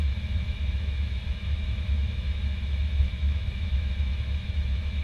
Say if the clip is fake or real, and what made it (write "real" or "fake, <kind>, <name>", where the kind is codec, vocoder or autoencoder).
fake, autoencoder, DAC-VAE